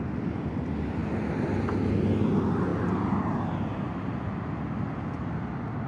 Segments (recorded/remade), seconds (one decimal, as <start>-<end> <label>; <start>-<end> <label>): 0.0-5.9 recorded